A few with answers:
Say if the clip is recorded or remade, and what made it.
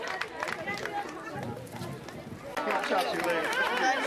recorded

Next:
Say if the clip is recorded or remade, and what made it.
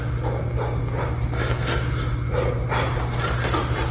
recorded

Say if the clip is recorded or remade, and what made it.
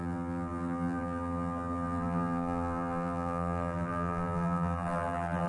remade, vocoder, BigVGAN v2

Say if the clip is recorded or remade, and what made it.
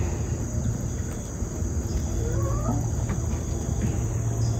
recorded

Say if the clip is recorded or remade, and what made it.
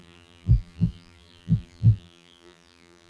remade, vocoder, BigVGAN v2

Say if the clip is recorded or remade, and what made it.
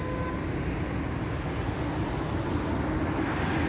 recorded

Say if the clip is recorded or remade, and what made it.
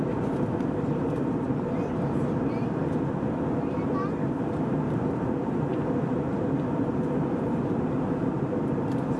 remade, vocoder, BigVGAN v2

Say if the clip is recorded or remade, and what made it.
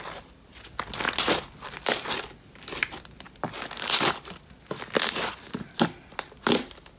recorded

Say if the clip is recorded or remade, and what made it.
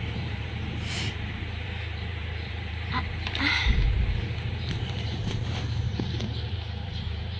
remade, vocoder, BigVGAN v2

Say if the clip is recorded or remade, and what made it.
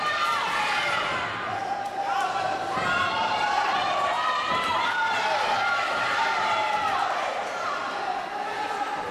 remade, vocoder, BigVGAN v2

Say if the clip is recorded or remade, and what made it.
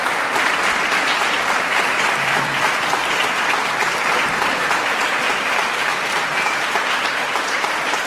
remade, vocoder, BigVGAN v2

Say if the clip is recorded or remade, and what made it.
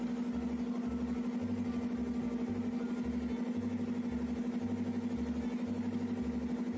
recorded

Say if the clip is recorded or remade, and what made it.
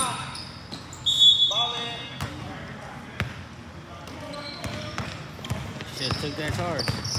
recorded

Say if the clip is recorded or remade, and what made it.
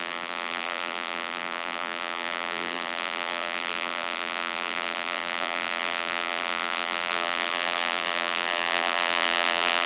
remade, vocoder, BigVGAN v2